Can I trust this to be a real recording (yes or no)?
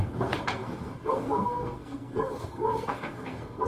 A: no